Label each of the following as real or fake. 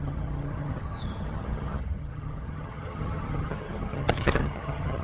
fake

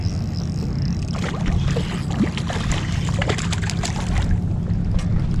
real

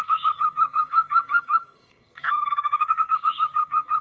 fake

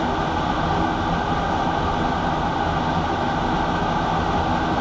real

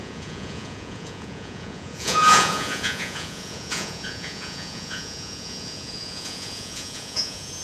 fake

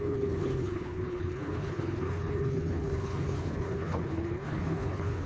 fake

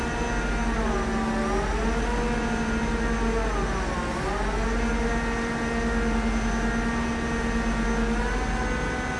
real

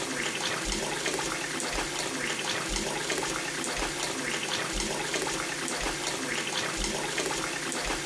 real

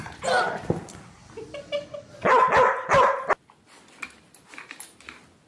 real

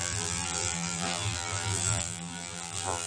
fake